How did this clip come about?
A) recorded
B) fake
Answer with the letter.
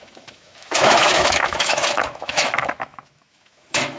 B